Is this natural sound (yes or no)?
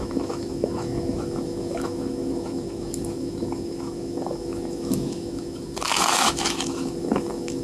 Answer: no